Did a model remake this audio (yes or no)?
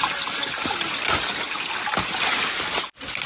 no